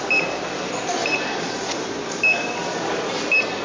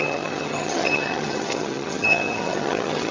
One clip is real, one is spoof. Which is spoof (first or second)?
second